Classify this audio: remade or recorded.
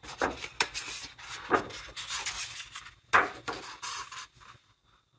recorded